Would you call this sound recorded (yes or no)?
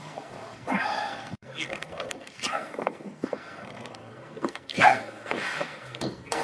no